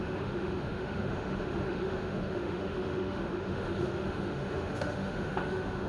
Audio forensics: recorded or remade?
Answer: remade